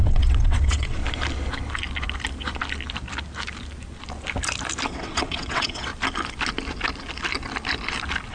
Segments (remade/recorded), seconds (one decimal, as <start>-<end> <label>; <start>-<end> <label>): 0.0-1.0 remade; 1.0-4.9 recorded; 4.9-5.9 remade; 5.9-8.3 recorded